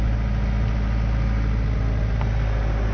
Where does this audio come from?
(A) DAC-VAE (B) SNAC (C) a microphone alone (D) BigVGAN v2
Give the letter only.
C